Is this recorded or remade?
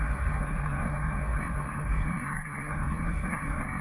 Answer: remade